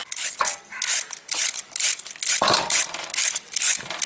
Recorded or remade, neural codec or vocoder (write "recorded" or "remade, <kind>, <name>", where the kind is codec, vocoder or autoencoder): recorded